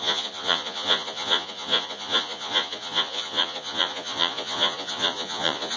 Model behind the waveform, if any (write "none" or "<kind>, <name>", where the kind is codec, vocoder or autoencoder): vocoder, Vocos